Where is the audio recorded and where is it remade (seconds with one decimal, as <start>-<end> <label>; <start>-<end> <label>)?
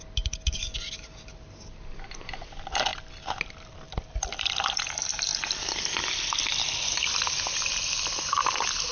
0.0-8.9 recorded